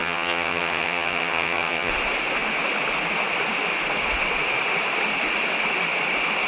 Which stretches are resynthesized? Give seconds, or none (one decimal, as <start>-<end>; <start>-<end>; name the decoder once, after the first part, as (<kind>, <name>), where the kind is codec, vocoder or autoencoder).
0.0-1.9 (vocoder, HiFi-GAN)